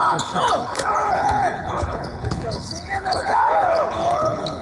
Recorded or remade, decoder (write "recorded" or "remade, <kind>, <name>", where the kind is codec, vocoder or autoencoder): remade, codec, HILCodec